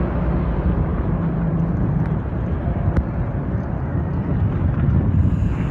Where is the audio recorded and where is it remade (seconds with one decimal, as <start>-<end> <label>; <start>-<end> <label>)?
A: 0.0-0.9 recorded; 0.9-3.5 remade; 3.5-4.3 recorded; 4.3-4.9 remade; 4.9-5.7 recorded